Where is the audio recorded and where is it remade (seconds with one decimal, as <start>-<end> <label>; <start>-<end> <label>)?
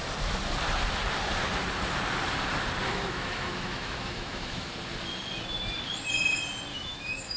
0.0-2.9 recorded; 2.9-4.7 remade; 4.7-6.7 recorded; 6.7-7.4 remade